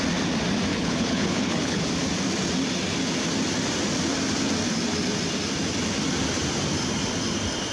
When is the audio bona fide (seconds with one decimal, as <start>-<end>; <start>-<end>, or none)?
0.0-0.7; 1.8-7.7